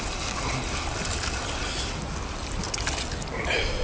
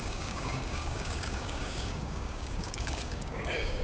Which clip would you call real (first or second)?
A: first